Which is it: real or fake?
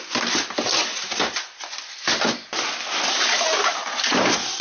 real